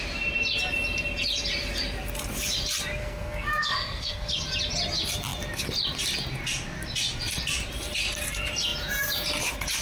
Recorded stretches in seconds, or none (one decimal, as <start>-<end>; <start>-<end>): 0.0-3.0; 4.3-9.8

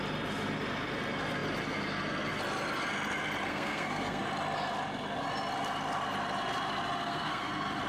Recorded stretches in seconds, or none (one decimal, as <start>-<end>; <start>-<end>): 0.0-3.5; 4.2-7.0; 7.5-7.9

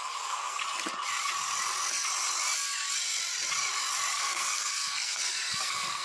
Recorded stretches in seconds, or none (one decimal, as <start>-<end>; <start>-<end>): 0.6-4.1

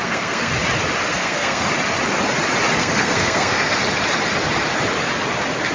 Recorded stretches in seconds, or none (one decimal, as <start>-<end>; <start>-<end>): 0.5-1.1; 1.7-2.8; 3.8-5.7

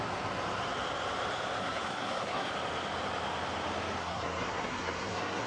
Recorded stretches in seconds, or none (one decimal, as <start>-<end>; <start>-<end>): 0.0-1.6; 2.5-4.0

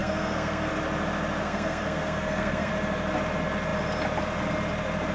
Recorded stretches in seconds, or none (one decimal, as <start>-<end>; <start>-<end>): 0.7-1.4; 2.7-5.1

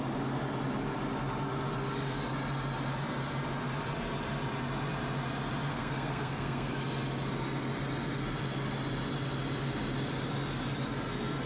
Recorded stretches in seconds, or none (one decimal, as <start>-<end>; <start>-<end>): 0.0-5.7; 6.7-11.5

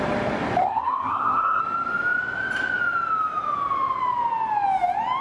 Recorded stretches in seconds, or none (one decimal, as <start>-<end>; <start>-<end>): 0.0-0.6; 1.6-5.2